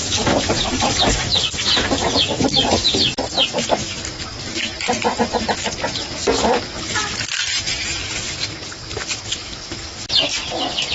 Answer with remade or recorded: recorded